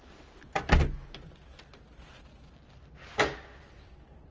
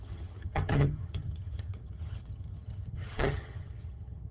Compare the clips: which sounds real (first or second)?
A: first